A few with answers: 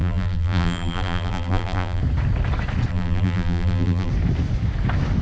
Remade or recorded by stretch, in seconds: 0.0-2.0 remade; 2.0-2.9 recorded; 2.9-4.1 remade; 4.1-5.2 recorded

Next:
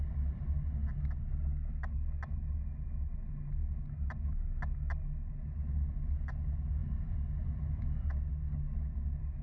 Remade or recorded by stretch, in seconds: 0.0-6.8 recorded; 6.8-8.3 remade; 8.3-9.4 recorded

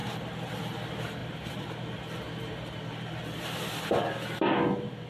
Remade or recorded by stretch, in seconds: 0.0-0.5 remade; 0.5-1.2 recorded; 1.2-3.4 remade; 3.4-5.1 recorded

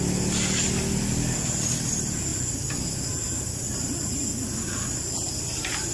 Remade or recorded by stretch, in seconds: 0.0-5.9 recorded

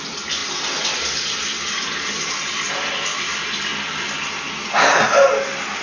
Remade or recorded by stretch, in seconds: 0.0-3.7 recorded; 3.7-4.3 remade; 4.3-5.8 recorded

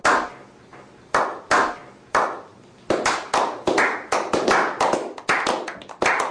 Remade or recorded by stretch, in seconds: 0.0-6.3 recorded

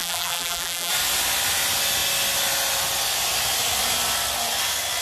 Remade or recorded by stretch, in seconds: 0.0-0.9 remade; 0.9-5.0 recorded